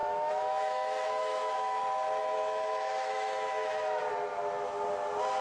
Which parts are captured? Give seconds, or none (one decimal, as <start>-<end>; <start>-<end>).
1.8-2.2; 4.0-5.4